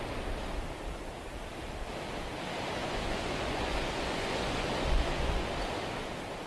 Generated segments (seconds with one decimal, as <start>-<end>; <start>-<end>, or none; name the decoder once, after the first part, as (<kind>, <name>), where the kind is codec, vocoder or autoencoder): 2.8-5.5 (vocoder, Vocos)

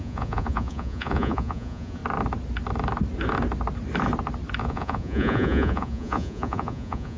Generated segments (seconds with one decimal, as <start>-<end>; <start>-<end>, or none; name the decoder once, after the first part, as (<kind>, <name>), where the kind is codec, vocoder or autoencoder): 0.0-2.0 (vocoder, Vocos); 4.6-7.2